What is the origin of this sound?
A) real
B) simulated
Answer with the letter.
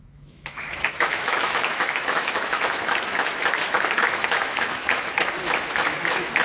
B